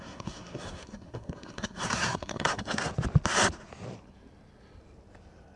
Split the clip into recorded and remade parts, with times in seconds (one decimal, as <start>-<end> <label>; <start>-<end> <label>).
0.0-2.9 remade; 2.9-5.6 recorded